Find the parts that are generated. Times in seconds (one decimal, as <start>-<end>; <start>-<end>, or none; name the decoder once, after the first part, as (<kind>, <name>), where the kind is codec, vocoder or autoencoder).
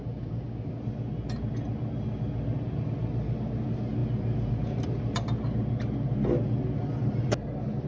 0.0-0.8 (codec, DAC)